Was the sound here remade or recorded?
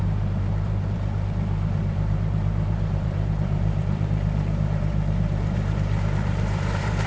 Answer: remade